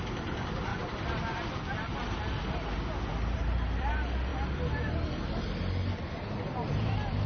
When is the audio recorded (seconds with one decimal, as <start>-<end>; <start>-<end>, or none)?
0.0-3.1; 3.9-7.3